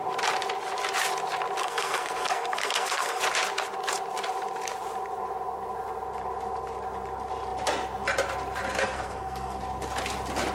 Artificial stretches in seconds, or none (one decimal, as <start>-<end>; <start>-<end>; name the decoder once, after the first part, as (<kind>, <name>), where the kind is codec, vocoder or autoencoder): 1.6-3.2 (codec, SNAC); 8.8-9.6